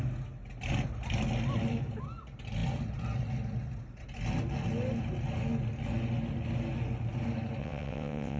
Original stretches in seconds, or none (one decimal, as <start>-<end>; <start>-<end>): 0.0-7.6